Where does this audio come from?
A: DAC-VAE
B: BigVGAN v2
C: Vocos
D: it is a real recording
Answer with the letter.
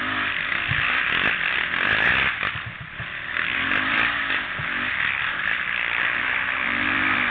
B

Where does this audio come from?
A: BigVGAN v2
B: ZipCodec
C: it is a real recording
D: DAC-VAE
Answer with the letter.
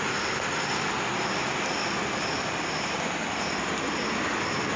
C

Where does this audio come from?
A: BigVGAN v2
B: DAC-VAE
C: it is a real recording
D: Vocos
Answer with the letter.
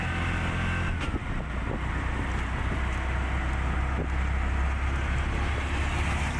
C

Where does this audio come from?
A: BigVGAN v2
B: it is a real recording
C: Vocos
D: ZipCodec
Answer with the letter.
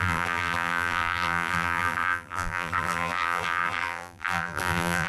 A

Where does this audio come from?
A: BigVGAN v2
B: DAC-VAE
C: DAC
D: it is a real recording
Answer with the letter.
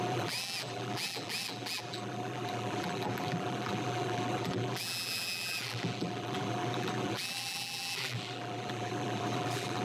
A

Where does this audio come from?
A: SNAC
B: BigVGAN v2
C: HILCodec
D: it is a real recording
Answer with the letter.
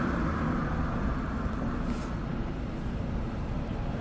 D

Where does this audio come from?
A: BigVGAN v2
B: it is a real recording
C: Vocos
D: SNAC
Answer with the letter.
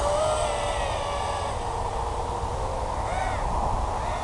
B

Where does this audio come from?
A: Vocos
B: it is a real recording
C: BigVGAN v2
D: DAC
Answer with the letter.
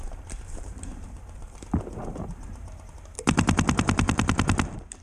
C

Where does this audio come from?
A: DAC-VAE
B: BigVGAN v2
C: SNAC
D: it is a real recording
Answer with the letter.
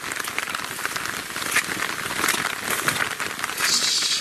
D